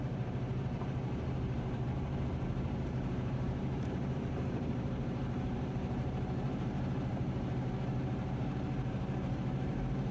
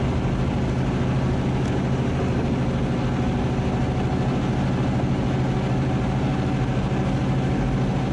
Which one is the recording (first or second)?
second